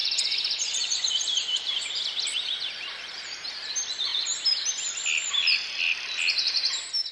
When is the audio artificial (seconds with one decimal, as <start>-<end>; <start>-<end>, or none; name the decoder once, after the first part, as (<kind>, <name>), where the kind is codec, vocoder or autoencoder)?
0.0-1.1 (vocoder, Vocos)